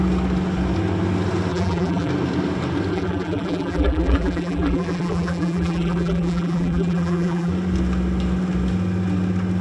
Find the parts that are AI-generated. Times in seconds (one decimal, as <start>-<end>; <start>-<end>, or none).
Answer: 1.5-2.1; 2.9-7.5